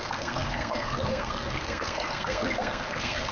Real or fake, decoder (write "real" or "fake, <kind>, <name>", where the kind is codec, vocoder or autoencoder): fake, codec, SNAC